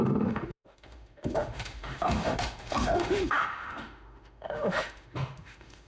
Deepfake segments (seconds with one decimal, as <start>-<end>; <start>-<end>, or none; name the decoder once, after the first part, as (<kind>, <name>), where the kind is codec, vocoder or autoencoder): 0.0-5.9 (autoencoder, DAC-VAE)